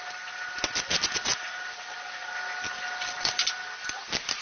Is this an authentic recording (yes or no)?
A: yes